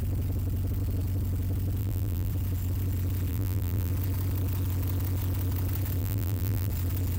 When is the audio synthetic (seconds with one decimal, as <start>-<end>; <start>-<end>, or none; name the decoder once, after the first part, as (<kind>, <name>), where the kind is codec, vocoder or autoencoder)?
1.8-2.3 (vocoder, BigVGAN v2); 3.3-3.9; 6.0-6.7